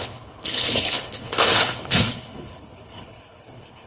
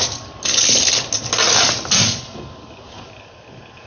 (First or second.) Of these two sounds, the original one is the second